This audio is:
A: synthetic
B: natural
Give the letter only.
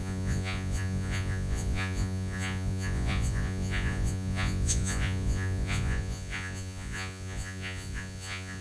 A